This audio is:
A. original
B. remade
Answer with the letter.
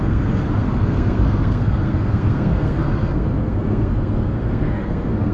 B